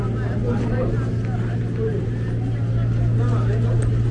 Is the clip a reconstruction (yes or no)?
no